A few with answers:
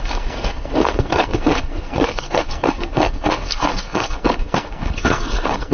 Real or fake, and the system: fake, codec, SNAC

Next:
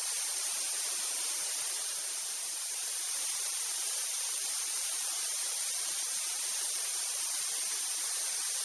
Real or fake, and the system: fake, vocoder, BigVGAN v2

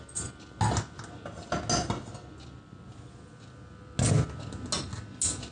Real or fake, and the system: real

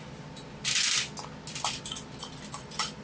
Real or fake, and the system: real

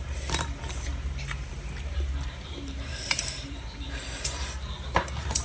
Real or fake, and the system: fake, vocoder, BigVGAN v2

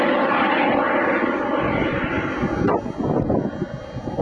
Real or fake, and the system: real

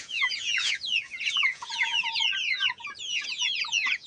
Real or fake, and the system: fake, vocoder, Vocos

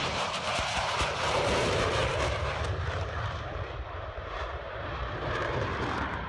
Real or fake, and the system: fake, vocoder, BigVGAN v2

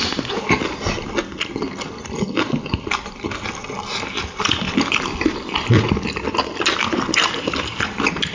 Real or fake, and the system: real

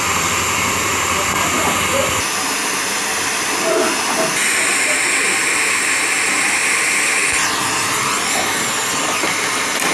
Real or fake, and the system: real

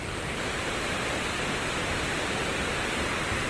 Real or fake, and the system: fake, vocoder, BigVGAN v2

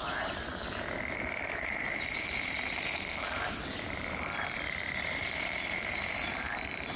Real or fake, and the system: fake, vocoder, BigVGAN v2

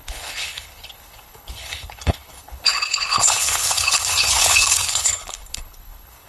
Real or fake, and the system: fake, codec, HILCodec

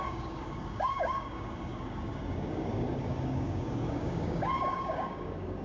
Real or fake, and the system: fake, codec, DAC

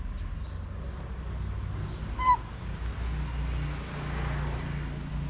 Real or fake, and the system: real